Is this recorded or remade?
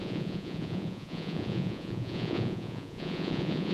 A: remade